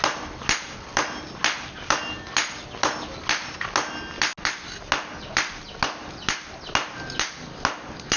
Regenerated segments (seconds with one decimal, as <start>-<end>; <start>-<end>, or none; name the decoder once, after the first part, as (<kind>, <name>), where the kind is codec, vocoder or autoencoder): none